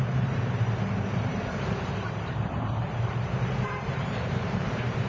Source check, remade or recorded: remade